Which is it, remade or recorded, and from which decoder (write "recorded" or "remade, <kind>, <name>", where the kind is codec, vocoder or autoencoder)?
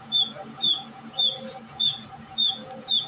remade, vocoder, Vocos